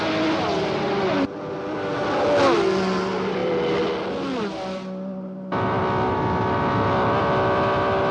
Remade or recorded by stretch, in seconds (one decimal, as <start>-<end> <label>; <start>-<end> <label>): 0.0-8.1 recorded